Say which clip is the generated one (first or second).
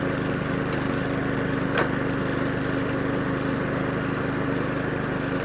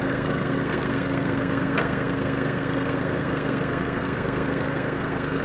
second